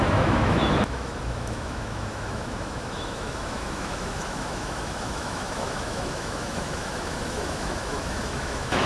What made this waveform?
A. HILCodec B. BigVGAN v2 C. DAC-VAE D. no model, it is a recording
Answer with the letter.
C